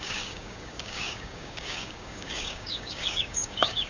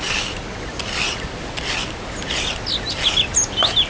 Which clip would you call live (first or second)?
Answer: second